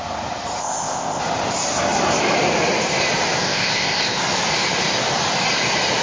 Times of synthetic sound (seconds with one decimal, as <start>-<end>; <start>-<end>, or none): 0.6-1.2; 3.4-4.2